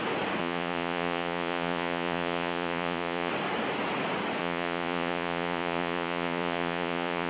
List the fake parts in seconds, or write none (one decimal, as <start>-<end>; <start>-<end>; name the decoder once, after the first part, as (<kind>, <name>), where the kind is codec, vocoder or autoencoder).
0.4-3.3 (vocoder, Vocos); 4.4-7.3